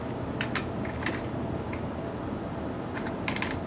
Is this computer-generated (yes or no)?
no